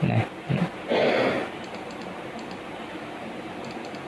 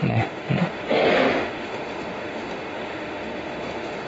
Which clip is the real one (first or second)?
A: first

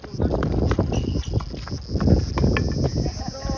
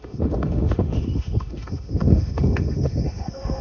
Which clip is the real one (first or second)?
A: first